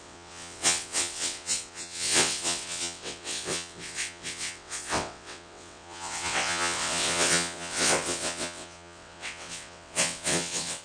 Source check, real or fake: fake